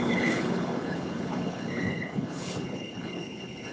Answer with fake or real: fake